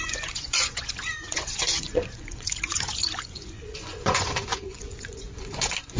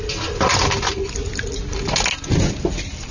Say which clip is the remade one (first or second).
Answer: first